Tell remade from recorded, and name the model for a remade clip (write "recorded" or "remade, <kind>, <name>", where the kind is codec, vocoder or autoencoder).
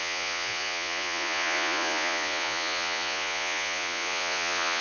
remade, vocoder, Vocos